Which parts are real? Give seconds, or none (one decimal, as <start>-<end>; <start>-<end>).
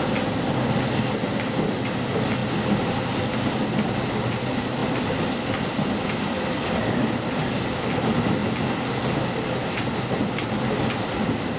0.0-11.6